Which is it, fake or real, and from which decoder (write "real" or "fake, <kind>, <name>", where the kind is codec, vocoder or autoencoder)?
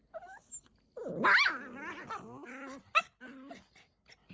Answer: real